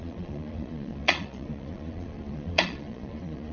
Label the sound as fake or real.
fake